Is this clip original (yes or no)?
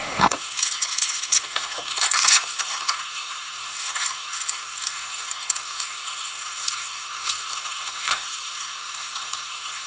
no